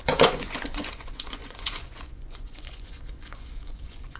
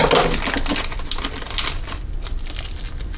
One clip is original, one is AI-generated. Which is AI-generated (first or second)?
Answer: first